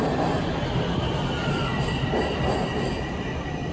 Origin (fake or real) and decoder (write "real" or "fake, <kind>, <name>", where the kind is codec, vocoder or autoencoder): real